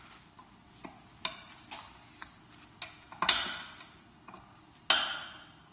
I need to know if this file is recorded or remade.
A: recorded